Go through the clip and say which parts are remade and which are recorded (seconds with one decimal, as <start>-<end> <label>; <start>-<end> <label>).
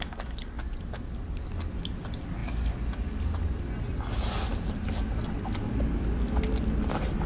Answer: 0.0-7.3 recorded